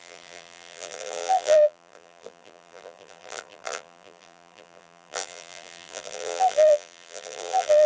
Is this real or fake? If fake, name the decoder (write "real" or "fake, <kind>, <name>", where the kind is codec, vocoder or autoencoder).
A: fake, vocoder, BigVGAN v2